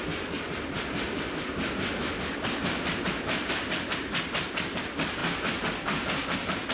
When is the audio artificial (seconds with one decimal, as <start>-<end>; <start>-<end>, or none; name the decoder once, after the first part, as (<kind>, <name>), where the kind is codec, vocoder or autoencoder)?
none